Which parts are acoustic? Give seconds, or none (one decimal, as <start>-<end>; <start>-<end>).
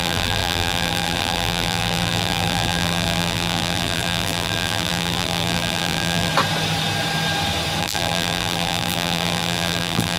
6.3-7.8